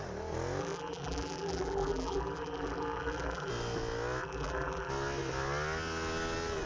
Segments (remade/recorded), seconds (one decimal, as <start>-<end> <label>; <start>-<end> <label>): 0.0-0.6 recorded; 0.6-3.5 remade; 3.5-4.2 recorded; 4.2-4.9 remade; 4.9-6.7 recorded